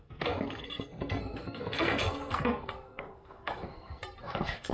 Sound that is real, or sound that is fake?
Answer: fake